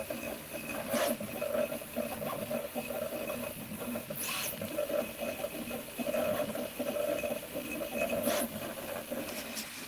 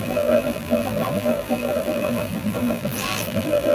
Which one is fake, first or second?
second